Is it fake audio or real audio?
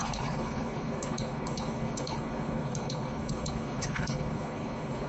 fake